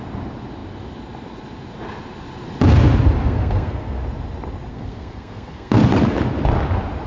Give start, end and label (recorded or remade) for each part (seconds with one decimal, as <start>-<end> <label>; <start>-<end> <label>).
0.0-3.2 recorded; 3.2-4.0 remade; 4.0-4.7 recorded; 4.7-5.8 remade; 5.8-7.1 recorded